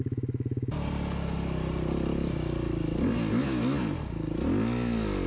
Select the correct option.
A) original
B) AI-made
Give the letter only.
A